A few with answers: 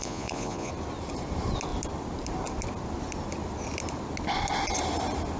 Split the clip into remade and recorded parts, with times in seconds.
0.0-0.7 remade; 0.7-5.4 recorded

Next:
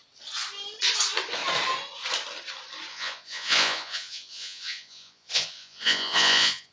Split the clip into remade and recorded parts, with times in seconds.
0.0-2.9 recorded; 2.9-6.7 remade

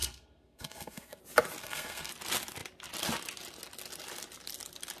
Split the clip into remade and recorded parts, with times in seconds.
0.0-1.2 remade; 1.2-1.6 recorded; 1.6-2.1 remade; 2.1-5.0 recorded

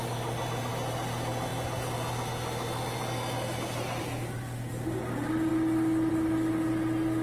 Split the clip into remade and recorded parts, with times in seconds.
0.0-7.2 recorded

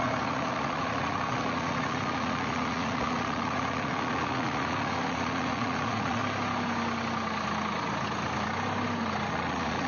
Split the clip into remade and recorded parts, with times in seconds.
0.0-6.2 remade; 6.2-9.3 recorded; 9.3-9.9 remade